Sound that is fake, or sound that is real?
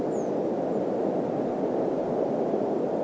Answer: real